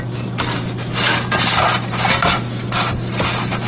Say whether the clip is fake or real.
real